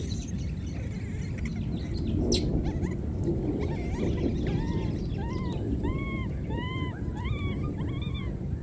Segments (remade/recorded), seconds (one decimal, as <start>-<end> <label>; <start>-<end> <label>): 0.0-8.6 recorded